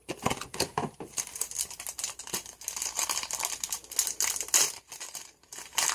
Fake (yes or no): no